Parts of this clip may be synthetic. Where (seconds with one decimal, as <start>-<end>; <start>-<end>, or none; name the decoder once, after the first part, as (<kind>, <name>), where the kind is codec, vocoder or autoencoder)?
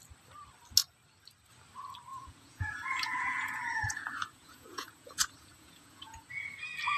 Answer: 2.1-6.3 (vocoder, Vocos)